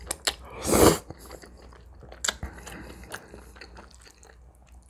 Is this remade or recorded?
recorded